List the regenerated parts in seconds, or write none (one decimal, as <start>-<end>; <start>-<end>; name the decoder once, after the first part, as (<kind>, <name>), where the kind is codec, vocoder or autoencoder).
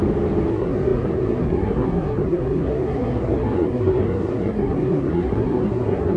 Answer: 0.5-6.2 (codec, SNAC)